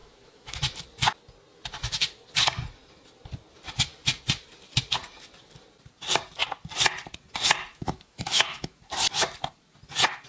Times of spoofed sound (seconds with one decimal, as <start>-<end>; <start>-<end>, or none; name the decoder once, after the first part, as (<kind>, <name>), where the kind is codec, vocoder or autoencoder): 0.0-0.6 (autoencoder, DAC-VAE); 7.7-8.8